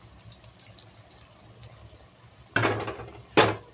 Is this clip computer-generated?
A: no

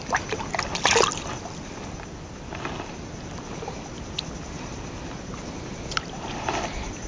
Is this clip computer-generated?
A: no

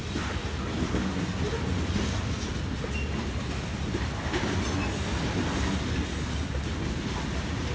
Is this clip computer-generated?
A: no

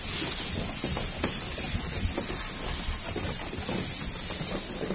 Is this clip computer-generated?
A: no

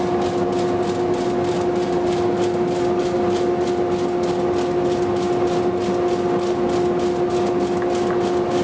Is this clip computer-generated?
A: no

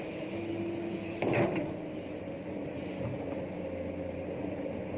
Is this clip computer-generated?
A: no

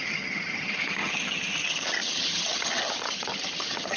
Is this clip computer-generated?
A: yes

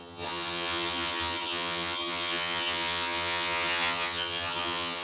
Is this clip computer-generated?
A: yes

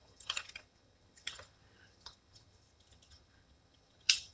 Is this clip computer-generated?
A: yes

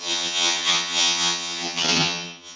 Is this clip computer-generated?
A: yes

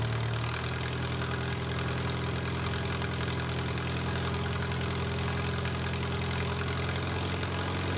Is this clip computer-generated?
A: no